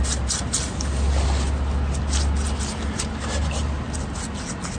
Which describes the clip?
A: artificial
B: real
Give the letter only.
B